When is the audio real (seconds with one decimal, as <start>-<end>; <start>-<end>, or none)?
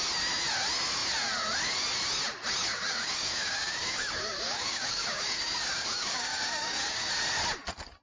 0.0-2.7; 7.1-8.0